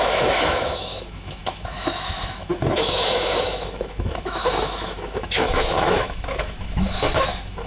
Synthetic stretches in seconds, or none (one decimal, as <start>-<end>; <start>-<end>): 0.0-7.7